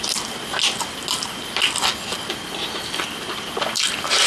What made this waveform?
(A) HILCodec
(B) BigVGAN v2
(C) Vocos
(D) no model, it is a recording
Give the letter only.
D